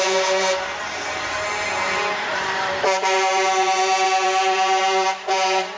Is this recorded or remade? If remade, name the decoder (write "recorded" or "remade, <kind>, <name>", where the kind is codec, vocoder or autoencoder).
remade, vocoder, BigVGAN v2